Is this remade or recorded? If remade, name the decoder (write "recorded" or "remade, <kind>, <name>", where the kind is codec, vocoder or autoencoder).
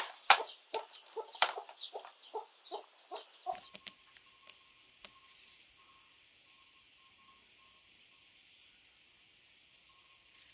remade, vocoder, BigVGAN v2